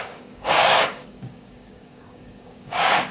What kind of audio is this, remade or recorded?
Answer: remade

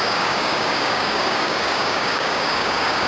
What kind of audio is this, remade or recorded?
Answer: remade